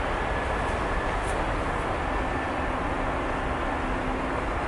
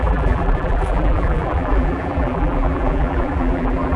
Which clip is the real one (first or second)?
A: first